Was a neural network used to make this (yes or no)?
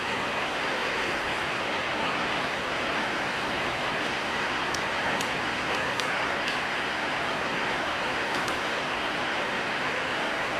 yes